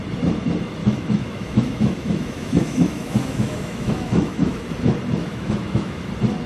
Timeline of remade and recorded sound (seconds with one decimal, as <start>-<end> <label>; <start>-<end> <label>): 0.0-0.8 recorded; 0.8-4.7 remade; 4.7-5.2 recorded; 5.2-6.1 remade; 6.1-6.5 recorded